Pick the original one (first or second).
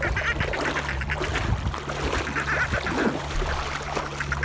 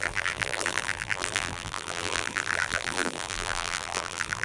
first